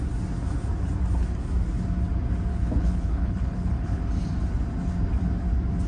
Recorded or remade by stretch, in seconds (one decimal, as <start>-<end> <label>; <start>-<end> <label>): 0.0-2.5 recorded; 2.5-4.0 remade; 4.0-5.9 recorded